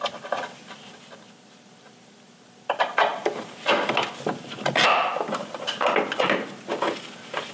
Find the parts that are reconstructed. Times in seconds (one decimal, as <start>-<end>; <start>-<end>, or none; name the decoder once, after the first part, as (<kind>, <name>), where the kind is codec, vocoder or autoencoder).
none